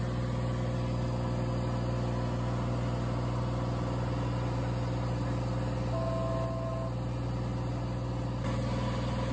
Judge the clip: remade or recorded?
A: recorded